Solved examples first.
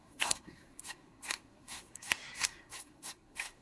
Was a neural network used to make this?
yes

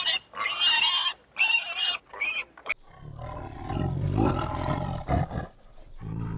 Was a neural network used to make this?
no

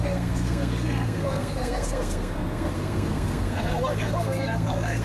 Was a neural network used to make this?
yes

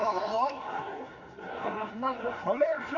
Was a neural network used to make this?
yes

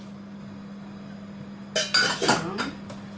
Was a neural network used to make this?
no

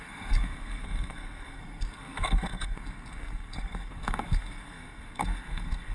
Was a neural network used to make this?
yes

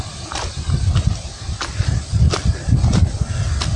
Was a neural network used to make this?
no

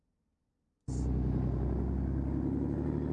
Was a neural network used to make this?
no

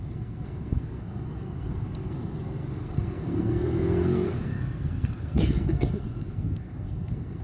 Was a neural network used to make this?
yes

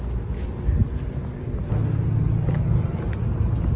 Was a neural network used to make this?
no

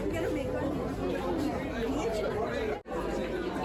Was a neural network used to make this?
no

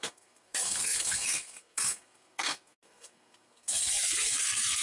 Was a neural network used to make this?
yes